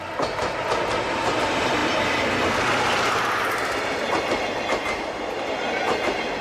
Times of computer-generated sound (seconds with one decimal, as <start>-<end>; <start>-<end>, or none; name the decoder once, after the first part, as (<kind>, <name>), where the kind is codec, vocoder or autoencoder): 1.8-2.5 (vocoder, BigVGAN v2)

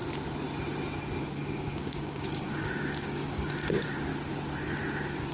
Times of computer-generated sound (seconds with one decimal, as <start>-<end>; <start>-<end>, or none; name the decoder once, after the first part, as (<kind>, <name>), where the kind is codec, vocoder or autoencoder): 1.2-4.1 (codec, DAC)

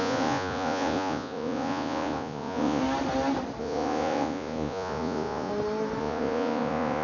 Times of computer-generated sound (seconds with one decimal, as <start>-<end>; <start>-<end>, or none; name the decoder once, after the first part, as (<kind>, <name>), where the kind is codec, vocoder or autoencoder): 0.0-2.8 (vocoder, Vocos); 3.6-5.5; 6.0-7.0